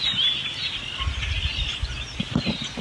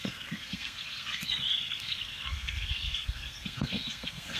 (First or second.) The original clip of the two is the first